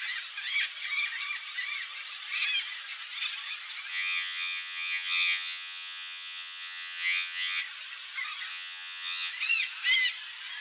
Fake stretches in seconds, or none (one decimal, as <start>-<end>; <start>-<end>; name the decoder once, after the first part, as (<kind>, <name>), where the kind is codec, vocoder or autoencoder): 3.9-7.6 (vocoder, HiFi-GAN); 8.5-9.3